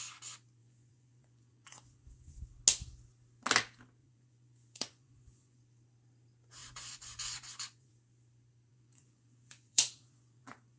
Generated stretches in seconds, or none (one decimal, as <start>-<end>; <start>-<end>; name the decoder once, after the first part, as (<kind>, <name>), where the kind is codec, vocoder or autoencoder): 0.6-2.4 (vocoder, Vocos); 4.0-5.6; 6.6-7.9; 8.7-10.8